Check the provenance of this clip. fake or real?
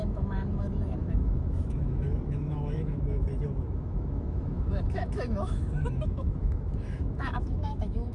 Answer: fake